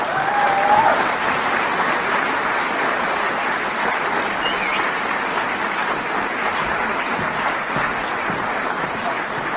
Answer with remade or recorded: recorded